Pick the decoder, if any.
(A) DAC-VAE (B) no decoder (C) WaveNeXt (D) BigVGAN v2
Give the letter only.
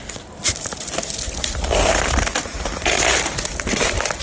B